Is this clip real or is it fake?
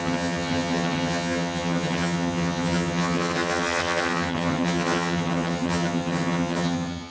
fake